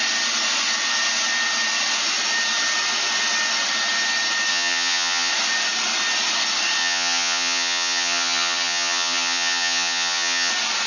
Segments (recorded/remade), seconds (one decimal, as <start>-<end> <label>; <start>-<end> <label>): 0.0-4.5 recorded; 4.5-5.3 remade; 5.3-6.8 recorded; 6.8-10.5 remade; 10.5-10.9 recorded